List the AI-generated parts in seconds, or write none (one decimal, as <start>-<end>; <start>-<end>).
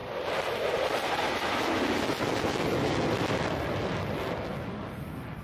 none